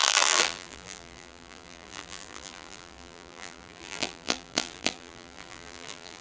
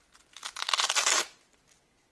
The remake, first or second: first